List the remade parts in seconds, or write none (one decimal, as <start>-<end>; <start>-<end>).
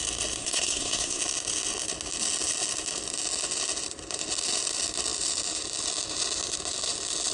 0.4-1.2